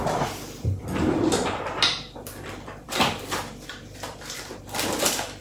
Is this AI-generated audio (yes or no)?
yes